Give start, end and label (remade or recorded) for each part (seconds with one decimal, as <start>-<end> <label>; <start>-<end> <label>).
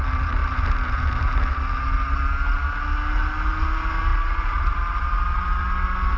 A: 0.0-6.2 recorded